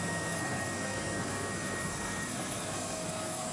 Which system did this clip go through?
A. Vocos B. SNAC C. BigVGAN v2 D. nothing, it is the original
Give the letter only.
B